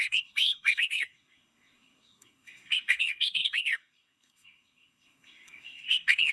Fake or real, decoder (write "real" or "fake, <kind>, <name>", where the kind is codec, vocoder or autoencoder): fake, codec, SNAC